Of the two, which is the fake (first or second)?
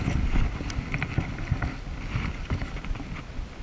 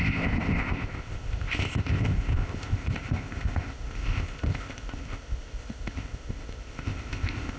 second